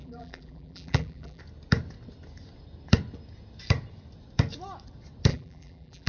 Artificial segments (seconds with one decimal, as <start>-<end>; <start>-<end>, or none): 0.0-1.4; 5.3-6.1